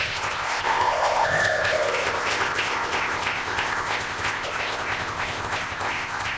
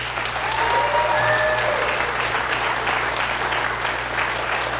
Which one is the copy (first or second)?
first